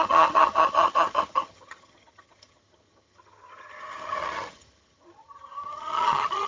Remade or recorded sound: remade